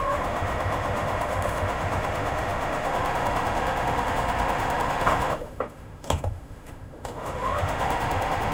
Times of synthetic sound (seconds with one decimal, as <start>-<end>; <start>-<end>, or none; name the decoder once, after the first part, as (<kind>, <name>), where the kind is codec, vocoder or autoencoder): 0.0-8.5 (autoencoder, DAC-VAE)